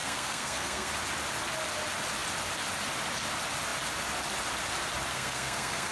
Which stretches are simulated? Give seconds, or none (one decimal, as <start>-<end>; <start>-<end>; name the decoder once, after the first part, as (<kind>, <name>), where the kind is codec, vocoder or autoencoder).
0.0-0.9 (codec, SNAC); 5.1-5.9